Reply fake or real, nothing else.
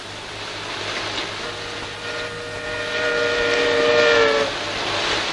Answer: real